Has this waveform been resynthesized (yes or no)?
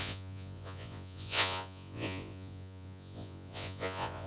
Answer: yes